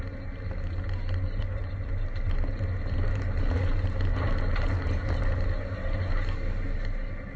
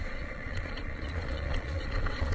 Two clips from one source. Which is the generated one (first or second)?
second